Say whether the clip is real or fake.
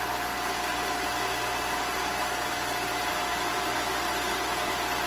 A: real